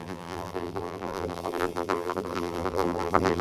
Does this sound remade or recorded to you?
remade